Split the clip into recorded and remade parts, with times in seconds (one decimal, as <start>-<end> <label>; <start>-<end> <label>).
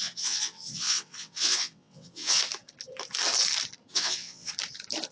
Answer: 0.0-2.4 remade; 2.4-3.9 recorded; 3.9-4.5 remade; 4.5-5.1 recorded